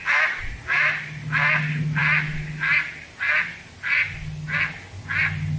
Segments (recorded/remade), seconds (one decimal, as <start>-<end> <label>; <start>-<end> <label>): 0.0-5.6 recorded